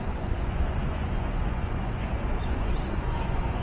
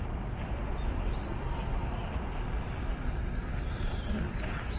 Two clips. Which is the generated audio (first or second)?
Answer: first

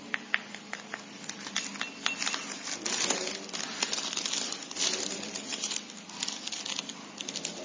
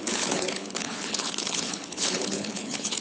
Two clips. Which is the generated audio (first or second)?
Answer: second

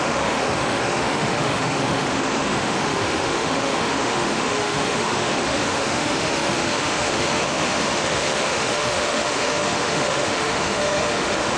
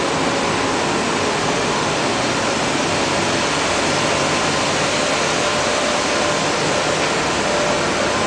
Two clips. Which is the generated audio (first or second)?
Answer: first